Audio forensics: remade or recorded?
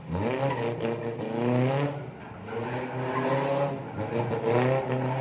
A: recorded